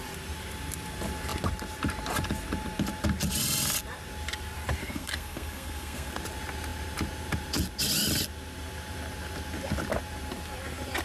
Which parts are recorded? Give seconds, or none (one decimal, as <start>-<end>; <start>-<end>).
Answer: 0.0-4.8; 6.1-11.0